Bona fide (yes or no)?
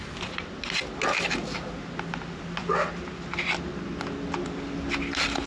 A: yes